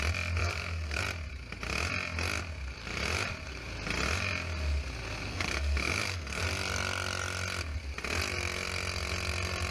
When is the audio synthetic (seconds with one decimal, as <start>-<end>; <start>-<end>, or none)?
0.4-1.0; 5.3-6.4